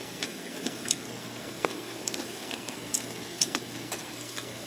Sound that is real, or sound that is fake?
fake